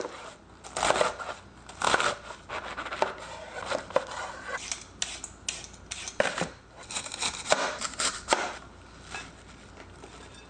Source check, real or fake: real